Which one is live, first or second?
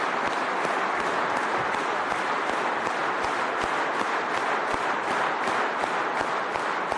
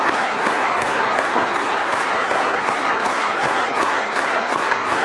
first